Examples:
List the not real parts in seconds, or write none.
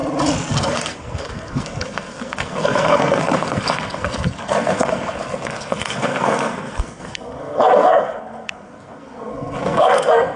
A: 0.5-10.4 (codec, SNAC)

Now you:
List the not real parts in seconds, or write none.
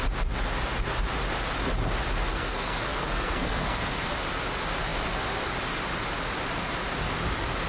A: 2.3-4.1 (codec, SNAC)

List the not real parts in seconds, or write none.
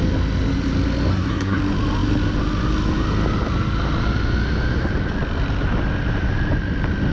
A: 1.1-1.6 (codec, SNAC)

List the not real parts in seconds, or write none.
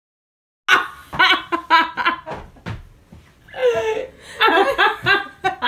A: none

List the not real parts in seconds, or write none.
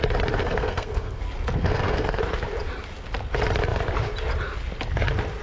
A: 0.4-1.2 (codec, SNAC); 1.6-2.2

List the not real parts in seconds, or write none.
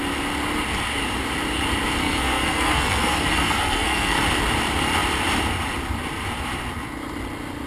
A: 2.0-4.2 (codec, SNAC)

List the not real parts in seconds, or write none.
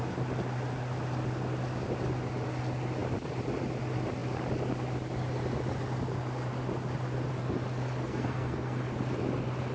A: 8.0-8.8 (codec, SNAC)